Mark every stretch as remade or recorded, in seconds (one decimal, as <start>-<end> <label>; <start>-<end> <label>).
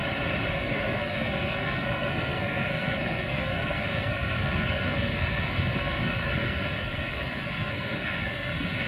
0.0-0.6 recorded; 0.6-8.9 remade